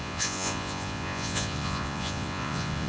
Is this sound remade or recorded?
remade